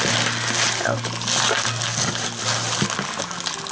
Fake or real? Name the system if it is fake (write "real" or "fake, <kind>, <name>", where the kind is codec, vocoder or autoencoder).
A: real